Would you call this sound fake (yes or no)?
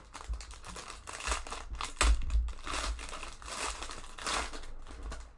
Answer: no